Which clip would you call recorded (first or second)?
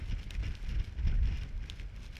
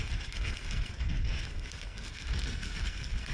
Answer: first